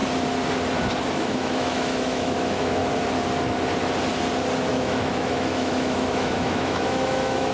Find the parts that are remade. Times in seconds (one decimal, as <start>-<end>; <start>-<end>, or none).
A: 1.1-2.8; 4.7-7.5